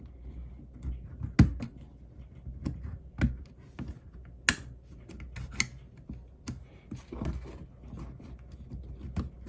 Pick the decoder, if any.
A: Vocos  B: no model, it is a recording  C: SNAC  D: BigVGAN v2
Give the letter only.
B